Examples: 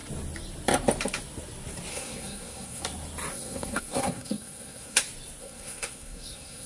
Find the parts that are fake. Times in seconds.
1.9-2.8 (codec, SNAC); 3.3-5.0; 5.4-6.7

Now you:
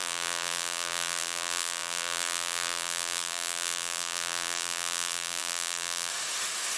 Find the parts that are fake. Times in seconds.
0.0-6.1 (vocoder, BigVGAN v2)

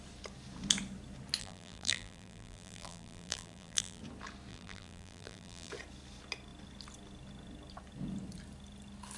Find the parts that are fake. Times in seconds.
1.4-4.0 (vocoder, BigVGAN v2); 4.5-5.7

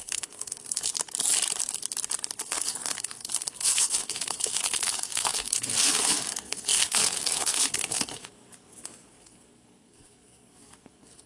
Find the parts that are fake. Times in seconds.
0.0-0.9 (codec, SNAC); 2.4-11.3

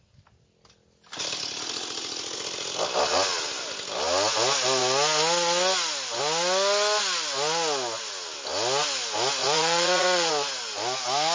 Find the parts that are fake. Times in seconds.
9.4-10.3 (vocoder, Vocos)

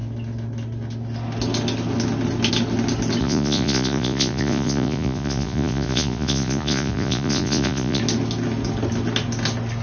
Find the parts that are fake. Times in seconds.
3.2-8.0 (vocoder, Vocos)